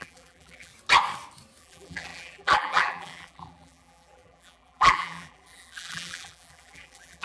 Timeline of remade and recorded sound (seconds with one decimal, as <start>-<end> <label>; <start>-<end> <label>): 0.0-0.7 remade; 0.7-1.6 recorded; 1.6-7.2 remade